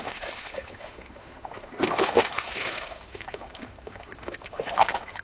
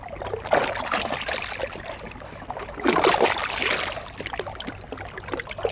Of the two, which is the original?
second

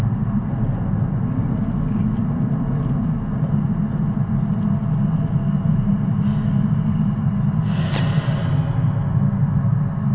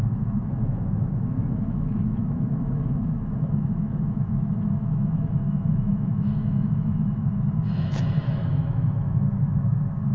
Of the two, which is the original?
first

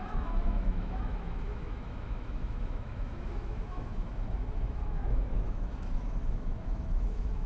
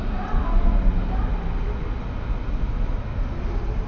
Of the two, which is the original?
second